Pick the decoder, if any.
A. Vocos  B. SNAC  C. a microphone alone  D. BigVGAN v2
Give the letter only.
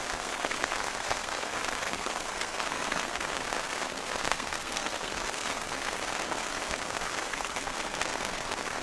B